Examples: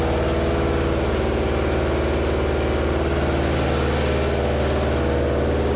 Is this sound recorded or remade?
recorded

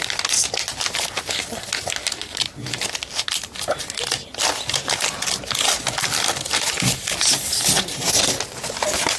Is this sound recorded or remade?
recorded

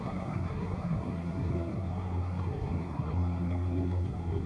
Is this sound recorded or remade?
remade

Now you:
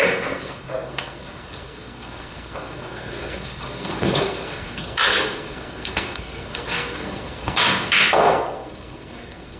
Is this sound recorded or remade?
remade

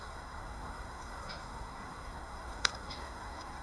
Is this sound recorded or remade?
remade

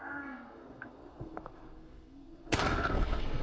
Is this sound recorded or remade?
remade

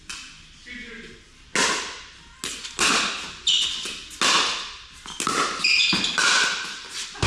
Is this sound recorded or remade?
recorded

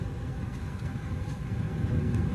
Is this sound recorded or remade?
remade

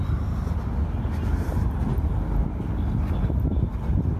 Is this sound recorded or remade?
recorded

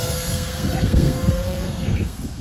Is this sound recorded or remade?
remade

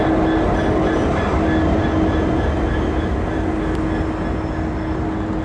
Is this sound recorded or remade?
recorded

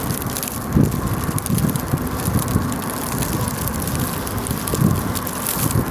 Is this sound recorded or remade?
recorded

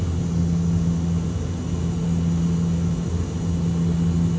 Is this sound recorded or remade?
recorded